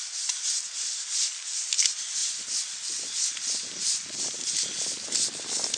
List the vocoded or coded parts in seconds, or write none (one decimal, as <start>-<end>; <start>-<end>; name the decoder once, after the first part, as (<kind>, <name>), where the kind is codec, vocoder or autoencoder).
none